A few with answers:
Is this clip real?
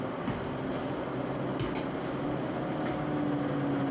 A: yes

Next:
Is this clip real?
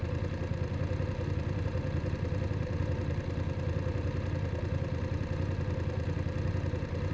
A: yes